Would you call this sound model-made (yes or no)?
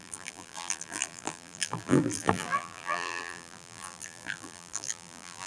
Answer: yes